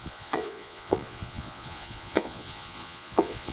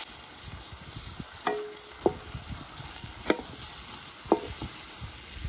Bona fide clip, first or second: second